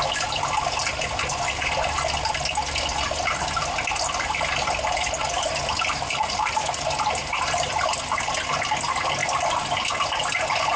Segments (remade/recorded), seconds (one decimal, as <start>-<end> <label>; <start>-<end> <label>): 0.0-7.2 recorded; 7.2-8.3 remade; 8.3-10.8 recorded